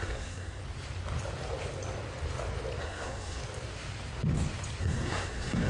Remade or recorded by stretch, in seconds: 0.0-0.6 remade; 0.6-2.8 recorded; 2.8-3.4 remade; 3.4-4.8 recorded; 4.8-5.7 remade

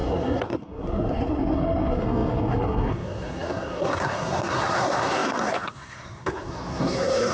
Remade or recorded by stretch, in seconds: 0.0-7.3 remade

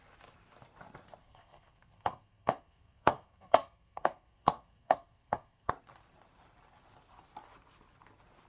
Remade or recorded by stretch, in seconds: 0.0-1.2 recorded; 1.2-5.7 remade; 5.7-8.5 recorded